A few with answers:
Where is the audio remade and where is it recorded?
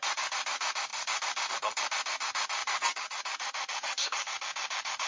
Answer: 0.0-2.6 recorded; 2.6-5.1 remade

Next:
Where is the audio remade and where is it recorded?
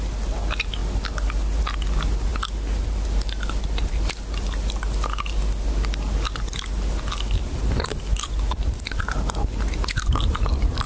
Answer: 0.0-10.9 recorded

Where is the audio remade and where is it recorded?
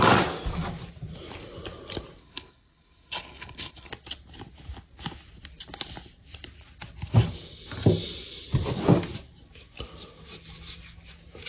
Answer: 0.0-2.2 recorded; 2.2-3.9 remade; 3.9-11.5 recorded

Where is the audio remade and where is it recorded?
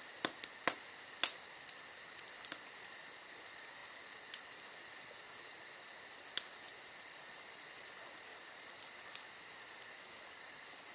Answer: 0.0-10.9 recorded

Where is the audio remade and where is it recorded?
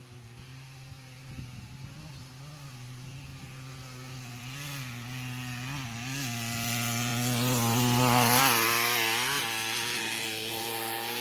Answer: 0.0-10.0 recorded; 10.0-11.2 remade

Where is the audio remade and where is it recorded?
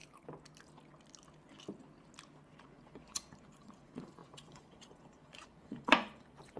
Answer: 0.0-2.6 recorded; 2.6-6.6 remade